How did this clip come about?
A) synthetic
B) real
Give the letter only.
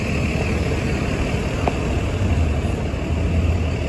B